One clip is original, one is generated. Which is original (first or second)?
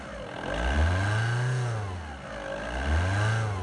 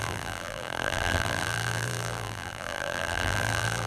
first